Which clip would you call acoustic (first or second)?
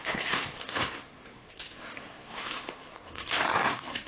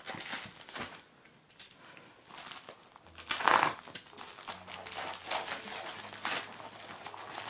second